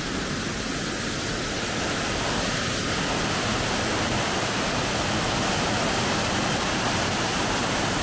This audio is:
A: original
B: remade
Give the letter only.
A